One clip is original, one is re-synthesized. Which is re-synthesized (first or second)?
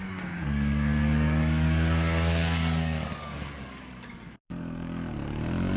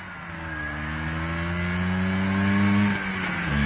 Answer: first